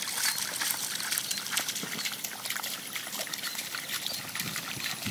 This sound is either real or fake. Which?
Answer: real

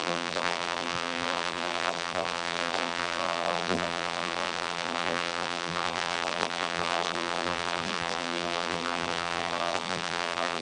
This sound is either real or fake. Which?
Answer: fake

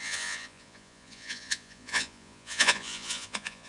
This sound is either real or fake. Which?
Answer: fake